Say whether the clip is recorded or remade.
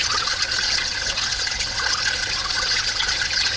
remade